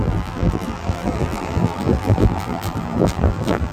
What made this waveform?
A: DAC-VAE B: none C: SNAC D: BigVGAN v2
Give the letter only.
D